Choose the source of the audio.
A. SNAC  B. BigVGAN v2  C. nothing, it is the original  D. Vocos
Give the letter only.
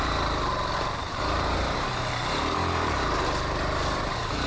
B